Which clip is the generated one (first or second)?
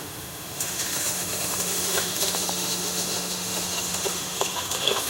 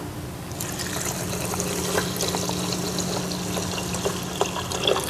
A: first